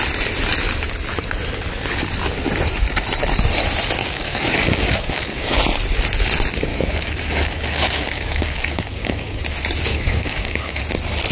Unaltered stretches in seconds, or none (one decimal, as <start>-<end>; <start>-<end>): 0.0-4.0; 5.6-6.7; 9.4-9.9; 10.8-11.3